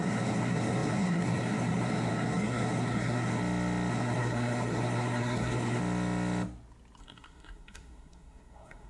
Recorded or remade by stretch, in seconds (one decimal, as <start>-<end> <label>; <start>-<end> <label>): 0.0-3.4 remade; 3.4-3.9 recorded; 3.9-5.8 remade; 5.8-7.0 recorded; 7.0-8.9 remade